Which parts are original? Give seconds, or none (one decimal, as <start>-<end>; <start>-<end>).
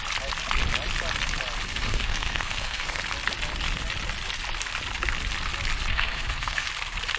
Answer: 0.0-1.7; 3.0-5.9; 6.7-7.2